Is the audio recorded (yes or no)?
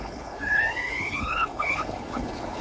no